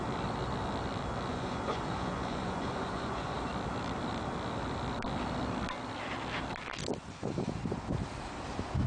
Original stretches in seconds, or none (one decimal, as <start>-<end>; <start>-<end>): 0.0-1.3; 3.5-8.9

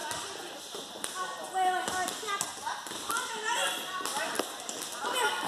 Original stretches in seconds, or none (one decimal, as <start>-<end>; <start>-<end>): 0.0-5.5